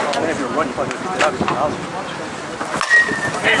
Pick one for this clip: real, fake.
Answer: real